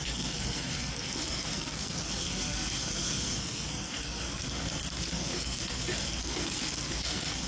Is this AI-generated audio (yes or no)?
yes